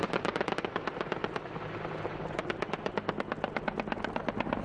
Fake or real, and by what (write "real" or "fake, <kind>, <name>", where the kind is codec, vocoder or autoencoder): real